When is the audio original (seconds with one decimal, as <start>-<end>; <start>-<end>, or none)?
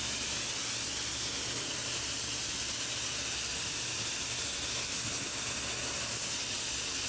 0.0-7.1